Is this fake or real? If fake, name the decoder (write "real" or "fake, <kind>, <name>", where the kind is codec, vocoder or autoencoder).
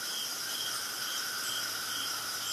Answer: real